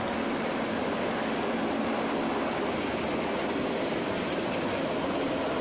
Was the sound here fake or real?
real